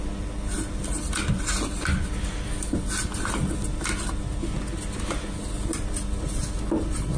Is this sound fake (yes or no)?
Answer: no